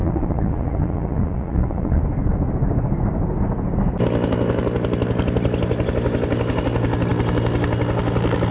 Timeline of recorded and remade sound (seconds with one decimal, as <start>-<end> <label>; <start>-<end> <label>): 0.0-2.0 remade; 2.0-8.5 recorded